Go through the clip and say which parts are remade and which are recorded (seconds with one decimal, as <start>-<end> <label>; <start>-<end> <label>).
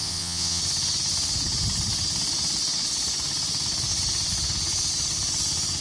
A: 0.0-0.6 remade; 0.6-5.8 recorded